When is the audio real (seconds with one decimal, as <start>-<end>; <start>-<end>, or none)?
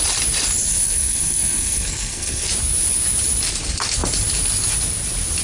0.0-0.7; 2.5-5.4